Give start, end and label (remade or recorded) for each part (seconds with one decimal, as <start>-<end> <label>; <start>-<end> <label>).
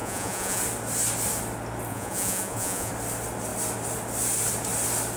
0.0-0.6 remade; 0.6-1.9 recorded; 1.9-2.9 remade; 2.9-5.2 recorded